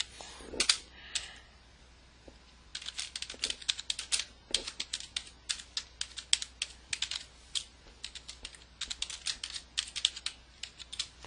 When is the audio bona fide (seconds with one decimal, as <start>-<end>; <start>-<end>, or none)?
0.0-11.3